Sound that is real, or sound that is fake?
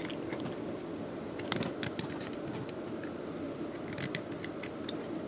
real